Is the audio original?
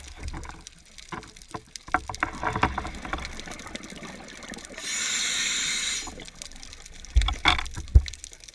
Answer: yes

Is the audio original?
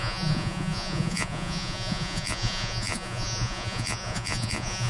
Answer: no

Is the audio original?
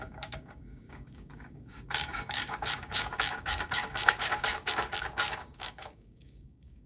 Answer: no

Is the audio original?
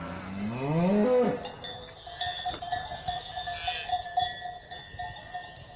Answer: yes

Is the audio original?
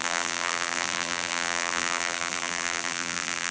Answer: no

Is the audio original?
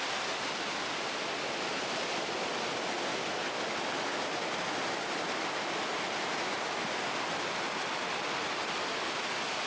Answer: yes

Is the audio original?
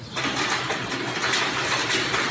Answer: no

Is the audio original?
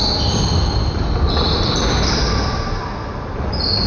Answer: yes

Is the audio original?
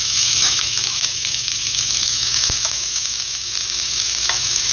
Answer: no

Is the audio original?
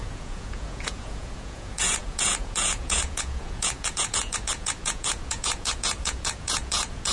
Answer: no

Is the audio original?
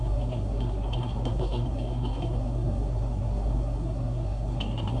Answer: no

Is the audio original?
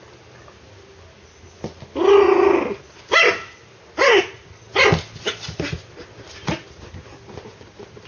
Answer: yes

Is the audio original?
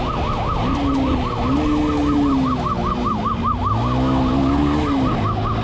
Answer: yes